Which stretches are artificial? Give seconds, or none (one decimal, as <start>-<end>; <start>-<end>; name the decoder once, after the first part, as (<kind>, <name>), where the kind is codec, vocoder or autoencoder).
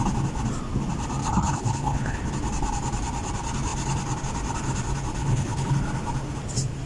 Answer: 1.2-2.3 (codec, HILCodec); 5.2-5.7